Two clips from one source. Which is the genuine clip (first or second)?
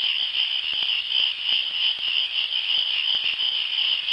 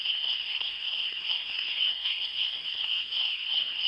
first